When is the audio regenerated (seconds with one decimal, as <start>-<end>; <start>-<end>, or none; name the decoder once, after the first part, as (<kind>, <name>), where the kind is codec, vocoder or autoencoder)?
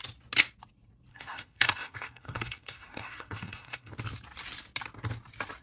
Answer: 1.1-3.9 (codec, SNAC)